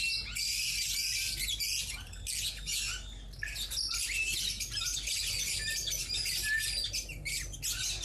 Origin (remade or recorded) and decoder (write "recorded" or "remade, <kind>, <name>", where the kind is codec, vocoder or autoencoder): recorded